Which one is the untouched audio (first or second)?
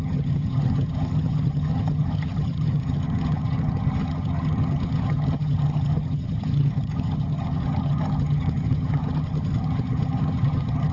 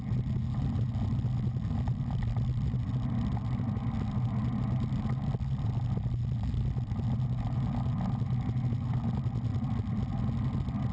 second